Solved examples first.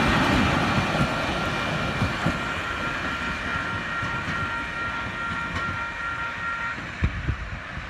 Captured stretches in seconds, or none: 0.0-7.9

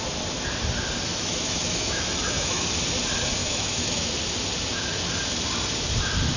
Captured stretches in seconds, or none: 0.0-1.1; 2.7-3.4; 4.1-6.4

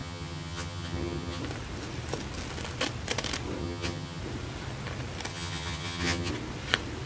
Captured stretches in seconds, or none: 1.4-3.6; 4.2-5.3; 6.3-7.1

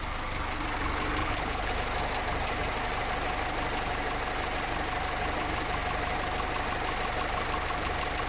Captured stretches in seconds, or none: 0.0-1.2; 1.7-8.3